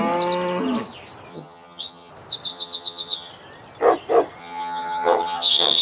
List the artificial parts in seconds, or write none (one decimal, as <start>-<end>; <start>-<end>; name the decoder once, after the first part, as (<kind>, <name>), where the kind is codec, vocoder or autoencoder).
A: 1.3-2.1 (vocoder, HiFi-GAN); 2.5-3.3; 4.4-5.8